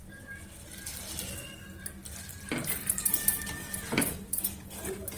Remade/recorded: recorded